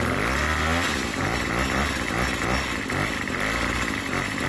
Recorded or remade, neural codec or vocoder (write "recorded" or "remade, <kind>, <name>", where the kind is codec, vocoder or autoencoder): recorded